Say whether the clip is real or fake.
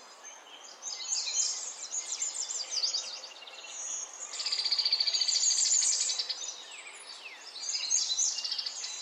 real